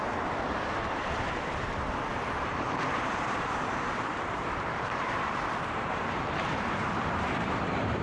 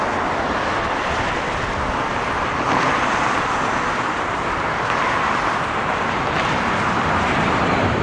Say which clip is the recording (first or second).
second